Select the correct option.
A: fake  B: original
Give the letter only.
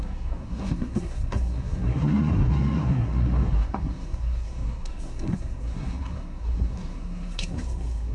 A